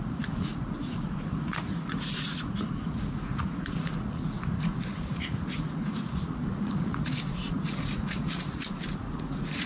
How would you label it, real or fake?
fake